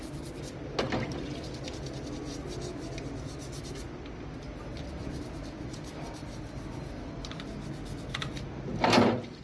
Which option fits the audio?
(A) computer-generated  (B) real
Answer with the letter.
B